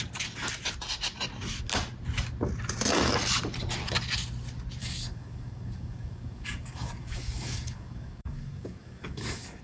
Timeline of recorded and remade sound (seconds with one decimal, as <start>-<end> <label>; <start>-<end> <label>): 0.0-4.8 recorded; 4.8-9.6 remade